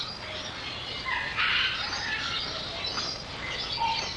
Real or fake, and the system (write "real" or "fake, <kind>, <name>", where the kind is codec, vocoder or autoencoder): real